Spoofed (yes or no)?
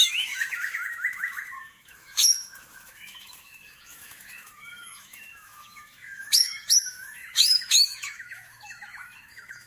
yes